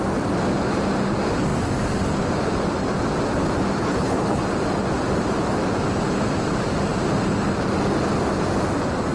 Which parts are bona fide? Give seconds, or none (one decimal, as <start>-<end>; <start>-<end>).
0.0-3.8; 4.4-9.1